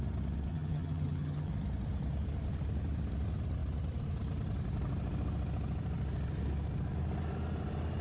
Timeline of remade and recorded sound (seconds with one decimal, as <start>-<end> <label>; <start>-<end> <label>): 0.0-0.5 recorded; 0.5-1.5 remade; 1.5-8.0 recorded